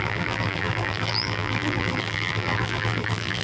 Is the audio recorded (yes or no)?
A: no